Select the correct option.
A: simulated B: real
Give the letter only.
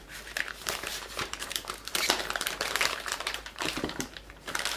A